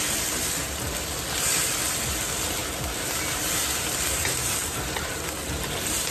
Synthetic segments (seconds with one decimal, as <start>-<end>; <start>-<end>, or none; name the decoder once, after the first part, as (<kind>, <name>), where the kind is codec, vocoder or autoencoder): none